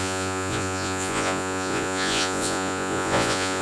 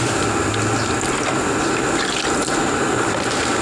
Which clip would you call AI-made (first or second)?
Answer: first